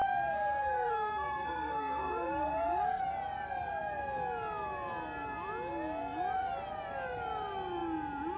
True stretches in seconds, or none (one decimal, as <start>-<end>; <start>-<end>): 3.0-8.4